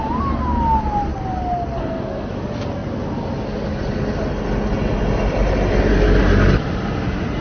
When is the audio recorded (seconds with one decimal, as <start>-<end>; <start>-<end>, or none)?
0.0-1.8; 2.3-7.4